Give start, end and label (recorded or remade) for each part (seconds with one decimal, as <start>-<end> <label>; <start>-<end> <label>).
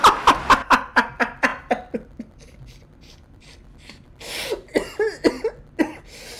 0.0-6.4 recorded